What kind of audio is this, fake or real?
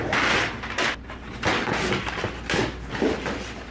real